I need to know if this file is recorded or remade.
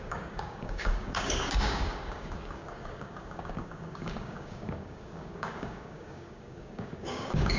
remade